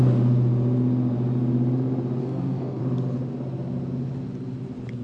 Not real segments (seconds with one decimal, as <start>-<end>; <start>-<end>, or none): 2.2-2.8